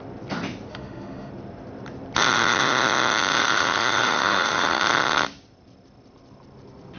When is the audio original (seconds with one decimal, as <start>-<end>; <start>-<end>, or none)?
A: 0.0-0.7; 1.3-3.4; 4.8-7.0